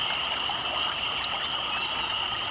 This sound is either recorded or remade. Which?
recorded